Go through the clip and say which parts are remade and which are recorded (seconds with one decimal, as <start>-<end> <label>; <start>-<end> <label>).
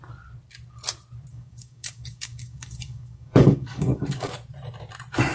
0.0-1.3 recorded; 1.3-4.3 remade; 4.3-5.3 recorded